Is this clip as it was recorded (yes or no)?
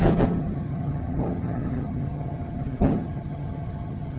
no